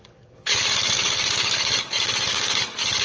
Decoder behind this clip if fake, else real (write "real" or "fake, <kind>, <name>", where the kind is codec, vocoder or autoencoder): fake, codec, DAC